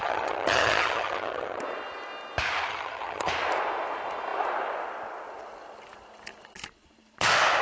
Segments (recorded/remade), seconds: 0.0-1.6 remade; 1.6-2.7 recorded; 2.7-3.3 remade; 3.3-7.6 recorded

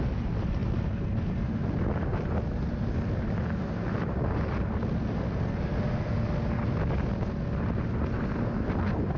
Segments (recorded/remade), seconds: 0.0-9.2 recorded

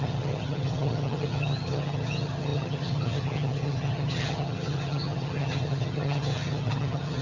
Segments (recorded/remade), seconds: 0.0-7.2 remade